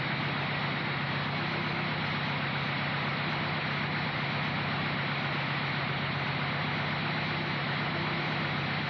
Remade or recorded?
recorded